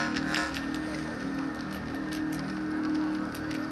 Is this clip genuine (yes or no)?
yes